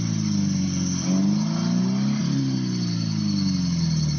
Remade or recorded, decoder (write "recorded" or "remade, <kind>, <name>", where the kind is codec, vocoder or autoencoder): recorded